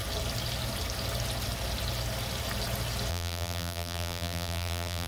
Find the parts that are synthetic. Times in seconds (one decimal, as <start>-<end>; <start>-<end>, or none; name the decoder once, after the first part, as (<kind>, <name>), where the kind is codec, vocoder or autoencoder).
3.1-5.1 (vocoder, BigVGAN v2)

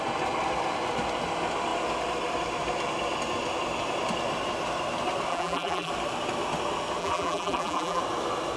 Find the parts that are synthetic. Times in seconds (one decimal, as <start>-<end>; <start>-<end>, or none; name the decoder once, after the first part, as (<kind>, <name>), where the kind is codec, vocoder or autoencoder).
5.3-5.9 (vocoder, BigVGAN v2); 7.0-8.0